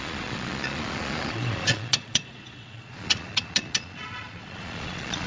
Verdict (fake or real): fake